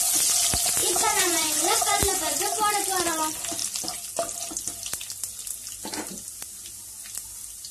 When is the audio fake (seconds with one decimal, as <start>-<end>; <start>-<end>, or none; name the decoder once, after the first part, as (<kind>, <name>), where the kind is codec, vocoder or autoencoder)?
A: 0.8-2.4 (vocoder, Vocos)